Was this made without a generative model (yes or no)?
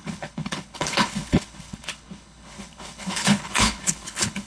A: no